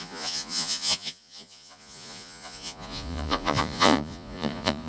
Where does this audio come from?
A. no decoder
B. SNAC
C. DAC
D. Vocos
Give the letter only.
D